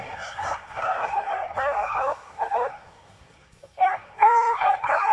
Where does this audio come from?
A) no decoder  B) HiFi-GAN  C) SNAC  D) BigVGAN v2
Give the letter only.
C